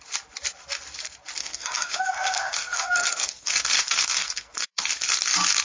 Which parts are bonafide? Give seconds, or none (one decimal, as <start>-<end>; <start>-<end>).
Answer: 0.0-1.4; 4.8-5.6